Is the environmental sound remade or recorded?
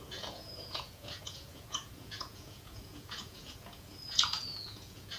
remade